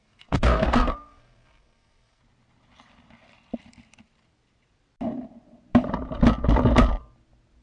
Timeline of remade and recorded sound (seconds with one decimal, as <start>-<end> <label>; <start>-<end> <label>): 0.0-2.2 remade; 2.2-7.6 recorded